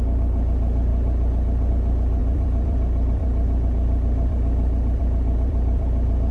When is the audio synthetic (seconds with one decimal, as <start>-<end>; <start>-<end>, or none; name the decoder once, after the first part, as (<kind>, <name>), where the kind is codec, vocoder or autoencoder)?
2.2-6.3 (vocoder, BigVGAN v2)